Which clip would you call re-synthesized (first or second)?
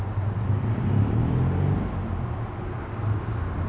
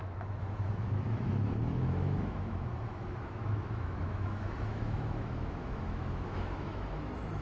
second